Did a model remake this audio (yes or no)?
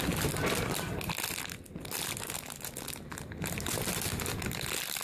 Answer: no